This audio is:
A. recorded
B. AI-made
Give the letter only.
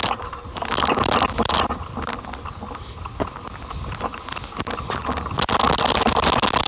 A